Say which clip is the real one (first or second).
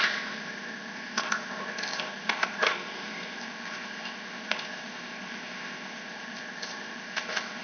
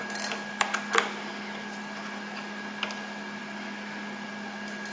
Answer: second